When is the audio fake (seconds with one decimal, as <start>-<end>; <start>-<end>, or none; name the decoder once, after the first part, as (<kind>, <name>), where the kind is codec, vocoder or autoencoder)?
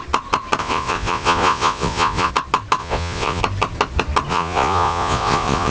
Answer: 0.6-2.3 (vocoder, Vocos); 2.8-3.4; 4.3-5.7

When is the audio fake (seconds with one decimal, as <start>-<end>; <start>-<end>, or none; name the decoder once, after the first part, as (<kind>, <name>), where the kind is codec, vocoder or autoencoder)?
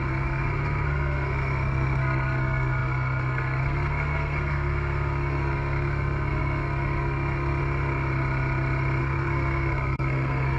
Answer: 0.0-7.6 (codec, SNAC); 9.0-10.6